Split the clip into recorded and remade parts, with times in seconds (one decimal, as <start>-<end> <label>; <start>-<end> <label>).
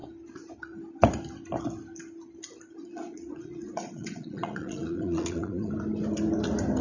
0.0-2.8 recorded; 2.8-5.7 remade; 5.7-6.8 recorded